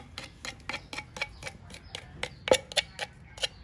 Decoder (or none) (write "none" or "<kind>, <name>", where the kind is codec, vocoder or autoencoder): none